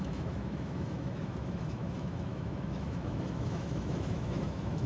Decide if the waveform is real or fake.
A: fake